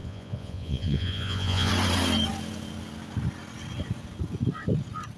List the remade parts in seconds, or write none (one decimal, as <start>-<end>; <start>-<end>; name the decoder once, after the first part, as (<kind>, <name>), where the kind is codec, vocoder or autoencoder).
0.0-1.7 (vocoder, Vocos)